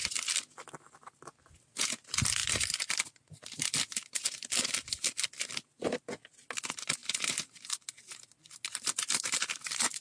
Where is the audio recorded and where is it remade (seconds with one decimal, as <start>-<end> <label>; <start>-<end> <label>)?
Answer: 0.0-10.0 recorded